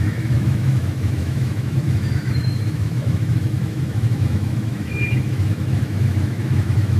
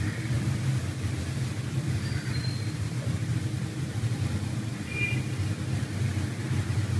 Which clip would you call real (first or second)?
second